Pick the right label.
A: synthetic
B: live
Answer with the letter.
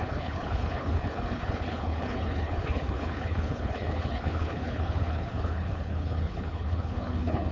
A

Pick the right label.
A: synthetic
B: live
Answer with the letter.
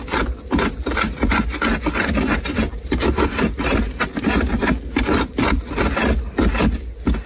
B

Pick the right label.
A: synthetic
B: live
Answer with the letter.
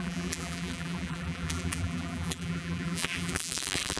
A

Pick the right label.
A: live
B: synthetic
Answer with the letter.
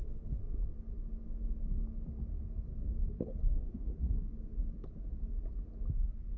A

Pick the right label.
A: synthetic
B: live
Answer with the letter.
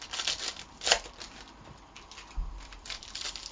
B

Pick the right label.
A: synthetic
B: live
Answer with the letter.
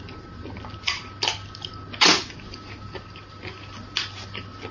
B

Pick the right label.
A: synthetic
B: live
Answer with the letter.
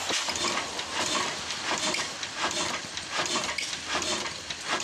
A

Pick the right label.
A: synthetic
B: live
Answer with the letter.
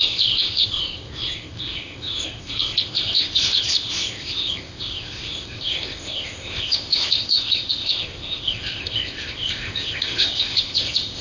A